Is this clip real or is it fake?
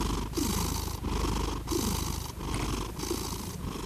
real